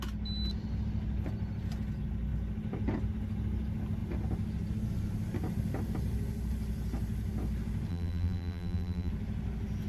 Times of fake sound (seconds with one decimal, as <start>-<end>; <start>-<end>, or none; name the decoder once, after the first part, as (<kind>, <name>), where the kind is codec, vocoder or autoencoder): 7.9-9.1 (vocoder, BigVGAN v2)